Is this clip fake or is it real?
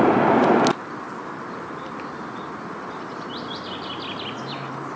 real